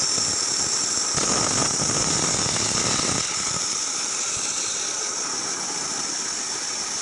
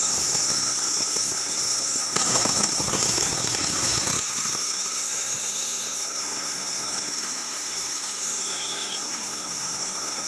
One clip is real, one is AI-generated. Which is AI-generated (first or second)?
second